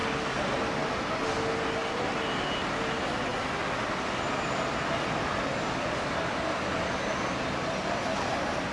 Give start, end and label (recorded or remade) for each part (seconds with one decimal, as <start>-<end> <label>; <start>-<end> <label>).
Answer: 0.0-8.7 recorded